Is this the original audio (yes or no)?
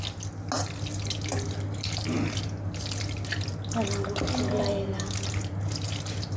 yes